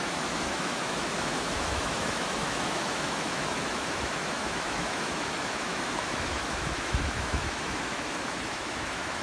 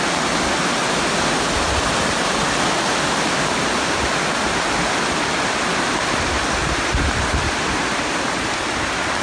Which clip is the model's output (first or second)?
first